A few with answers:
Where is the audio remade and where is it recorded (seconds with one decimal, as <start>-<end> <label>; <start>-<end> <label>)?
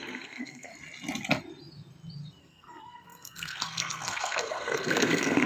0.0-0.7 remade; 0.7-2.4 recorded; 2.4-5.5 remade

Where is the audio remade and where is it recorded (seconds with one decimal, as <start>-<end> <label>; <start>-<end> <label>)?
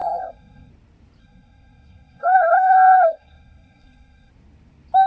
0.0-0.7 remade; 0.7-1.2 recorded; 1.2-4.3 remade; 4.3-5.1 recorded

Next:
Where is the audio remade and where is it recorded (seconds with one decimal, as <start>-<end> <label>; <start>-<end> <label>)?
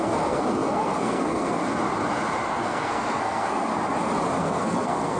0.0-1.6 remade; 1.6-2.5 recorded; 2.5-3.7 remade; 3.7-4.4 recorded; 4.4-5.2 remade